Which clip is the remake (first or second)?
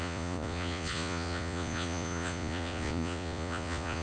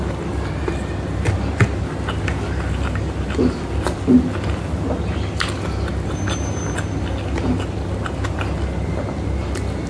first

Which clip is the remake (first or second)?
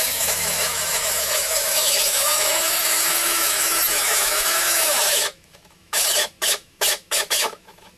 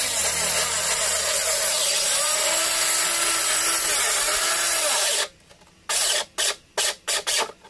first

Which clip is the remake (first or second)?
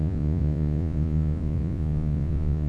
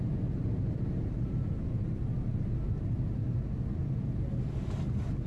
first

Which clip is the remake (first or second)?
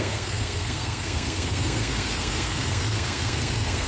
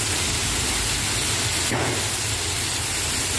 first